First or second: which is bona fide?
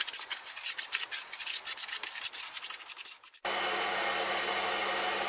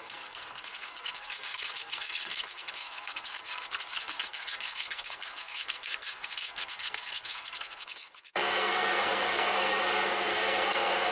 first